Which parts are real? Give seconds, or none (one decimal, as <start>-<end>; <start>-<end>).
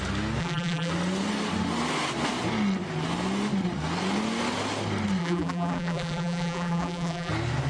0.0-0.4; 0.9-5.2; 7.3-7.7